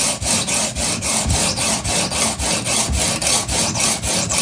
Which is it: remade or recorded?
recorded